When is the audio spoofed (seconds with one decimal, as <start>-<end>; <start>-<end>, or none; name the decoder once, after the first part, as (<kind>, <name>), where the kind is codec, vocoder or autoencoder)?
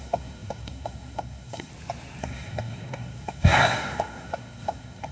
0.0-1.7 (codec, SNAC); 2.2-5.1